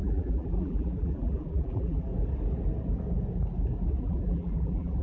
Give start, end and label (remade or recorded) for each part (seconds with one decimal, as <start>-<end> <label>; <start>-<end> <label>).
0.0-2.1 remade; 2.1-4.0 recorded; 4.0-5.0 remade